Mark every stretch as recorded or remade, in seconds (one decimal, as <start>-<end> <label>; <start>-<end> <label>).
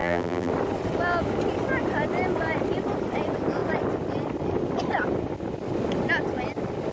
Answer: 0.0-0.5 remade; 0.5-6.9 recorded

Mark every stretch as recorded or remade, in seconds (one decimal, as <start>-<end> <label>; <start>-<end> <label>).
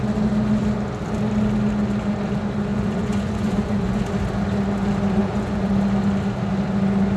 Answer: 0.0-2.7 recorded; 2.7-4.0 remade; 4.0-5.2 recorded; 5.2-5.7 remade; 5.7-7.2 recorded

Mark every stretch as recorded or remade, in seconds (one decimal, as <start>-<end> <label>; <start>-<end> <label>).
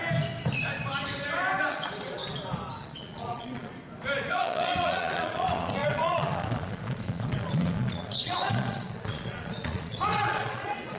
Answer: 0.0-1.7 recorded; 1.7-2.2 remade; 2.2-2.8 recorded; 2.8-3.7 remade; 3.7-4.3 recorded; 4.3-11.0 remade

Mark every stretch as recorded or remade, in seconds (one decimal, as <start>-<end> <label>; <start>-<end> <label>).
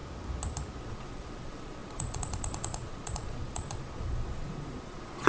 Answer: 0.0-0.8 recorded; 0.8-5.3 remade